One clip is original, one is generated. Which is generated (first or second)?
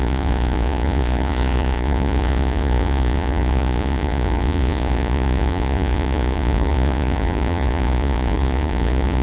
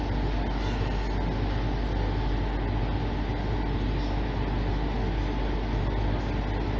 first